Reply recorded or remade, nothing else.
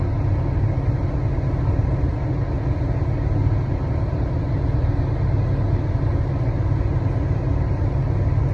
recorded